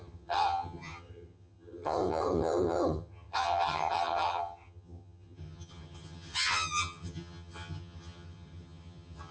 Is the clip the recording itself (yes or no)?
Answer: no